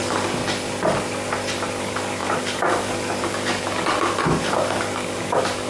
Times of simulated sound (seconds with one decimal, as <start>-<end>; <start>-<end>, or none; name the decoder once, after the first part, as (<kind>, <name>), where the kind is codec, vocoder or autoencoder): 0.0-0.4 (codec, DAC); 1.8-5.7